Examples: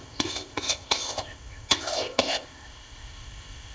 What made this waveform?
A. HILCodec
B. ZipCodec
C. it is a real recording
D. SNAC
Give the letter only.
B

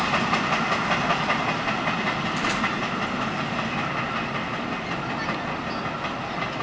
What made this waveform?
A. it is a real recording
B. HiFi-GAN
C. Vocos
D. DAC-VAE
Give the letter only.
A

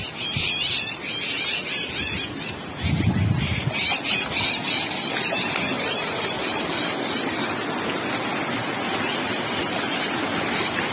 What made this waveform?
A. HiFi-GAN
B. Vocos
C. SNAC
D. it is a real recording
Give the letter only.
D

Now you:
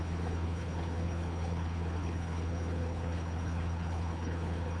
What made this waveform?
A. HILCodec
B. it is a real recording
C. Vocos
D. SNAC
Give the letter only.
A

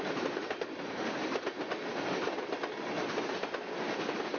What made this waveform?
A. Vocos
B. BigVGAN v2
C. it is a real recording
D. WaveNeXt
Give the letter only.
B